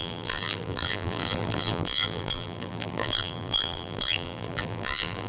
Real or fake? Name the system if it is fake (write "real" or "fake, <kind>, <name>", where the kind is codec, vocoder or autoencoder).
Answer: fake, vocoder, BigVGAN v2